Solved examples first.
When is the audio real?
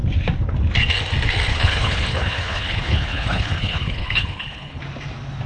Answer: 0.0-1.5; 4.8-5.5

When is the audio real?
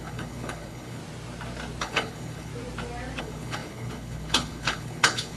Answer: 1.0-1.8; 2.5-3.2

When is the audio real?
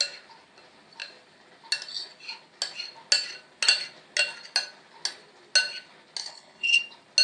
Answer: 0.0-6.2; 6.8-7.2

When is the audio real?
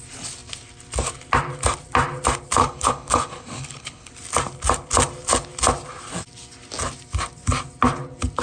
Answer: 0.0-2.6; 4.1-8.4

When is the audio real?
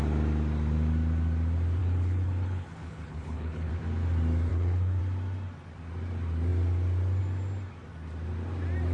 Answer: 0.0-1.8; 3.7-4.5; 5.0-8.9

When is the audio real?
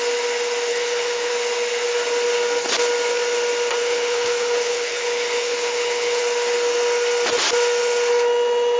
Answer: 0.0-0.7; 1.3-3.8; 6.2-8.8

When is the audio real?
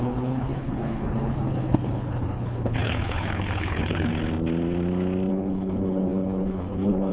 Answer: 4.1-5.3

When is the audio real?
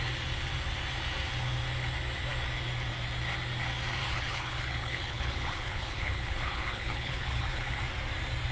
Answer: 0.0-4.0; 7.8-8.5